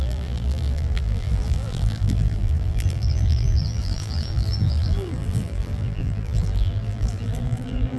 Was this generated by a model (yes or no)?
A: yes